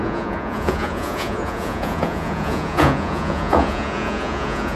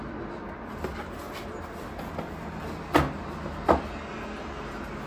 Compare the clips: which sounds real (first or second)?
second